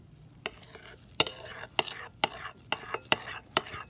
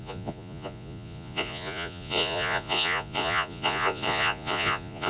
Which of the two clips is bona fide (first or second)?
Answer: first